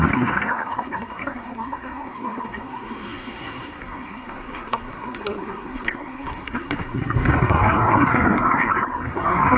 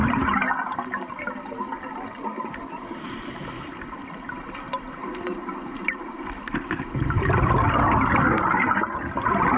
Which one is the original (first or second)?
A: second